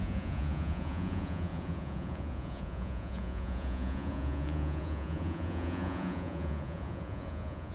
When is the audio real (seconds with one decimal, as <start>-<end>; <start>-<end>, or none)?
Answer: none